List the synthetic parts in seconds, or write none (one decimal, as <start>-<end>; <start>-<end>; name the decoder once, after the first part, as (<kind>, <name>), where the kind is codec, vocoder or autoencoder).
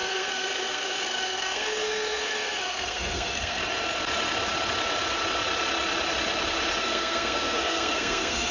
0.0-3.6 (codec, SNAC); 6.8-8.5